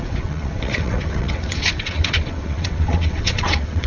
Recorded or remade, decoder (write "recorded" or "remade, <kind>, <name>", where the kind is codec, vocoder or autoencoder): remade, vocoder, WaveNeXt